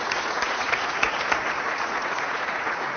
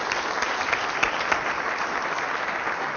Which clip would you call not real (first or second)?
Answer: first